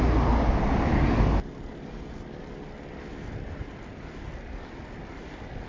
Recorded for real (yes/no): yes